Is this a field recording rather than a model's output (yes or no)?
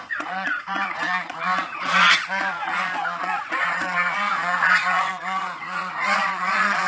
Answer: no